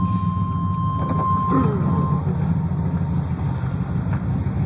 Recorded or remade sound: recorded